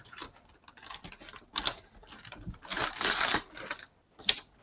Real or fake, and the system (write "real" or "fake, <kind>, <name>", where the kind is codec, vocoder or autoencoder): real